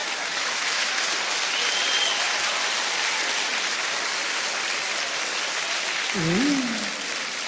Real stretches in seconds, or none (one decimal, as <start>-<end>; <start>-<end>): 0.9-7.5